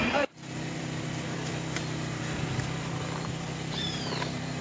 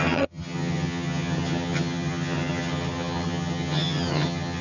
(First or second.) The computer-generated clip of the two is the second